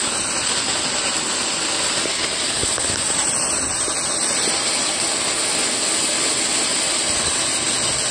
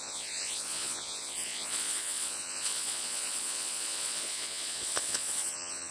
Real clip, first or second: first